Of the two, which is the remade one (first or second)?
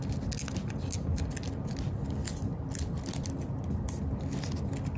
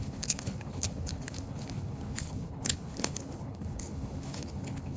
second